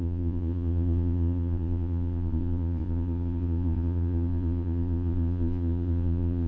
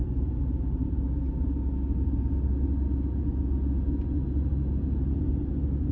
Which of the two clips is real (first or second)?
second